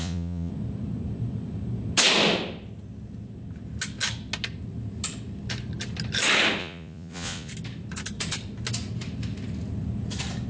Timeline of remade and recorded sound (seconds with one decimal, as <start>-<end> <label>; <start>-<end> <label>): 0.0-0.5 remade; 0.5-6.6 recorded; 6.6-7.5 remade; 7.5-10.5 recorded